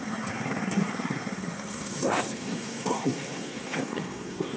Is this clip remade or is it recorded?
remade